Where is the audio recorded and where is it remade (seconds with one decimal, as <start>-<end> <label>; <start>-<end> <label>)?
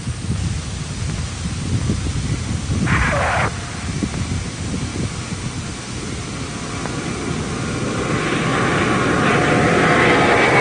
0.0-10.6 recorded